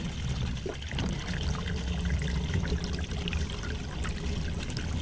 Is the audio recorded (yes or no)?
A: yes